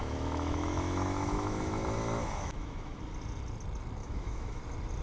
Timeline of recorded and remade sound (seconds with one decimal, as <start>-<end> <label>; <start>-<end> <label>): 0.0-3.0 remade; 3.0-4.0 recorded; 4.0-4.6 remade; 4.6-5.0 recorded